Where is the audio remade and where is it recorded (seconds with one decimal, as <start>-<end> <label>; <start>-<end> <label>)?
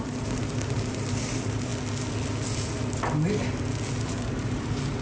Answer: 0.0-1.7 remade; 1.7-4.0 recorded; 4.0-5.0 remade